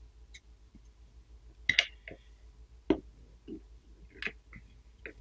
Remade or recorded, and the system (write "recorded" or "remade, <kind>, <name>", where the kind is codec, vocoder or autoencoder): recorded